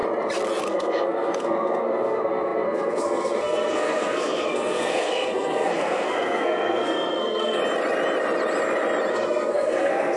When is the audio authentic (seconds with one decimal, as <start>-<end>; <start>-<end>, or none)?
0.0-0.6; 7.6-9.1